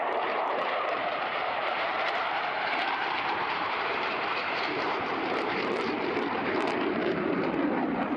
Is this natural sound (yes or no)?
no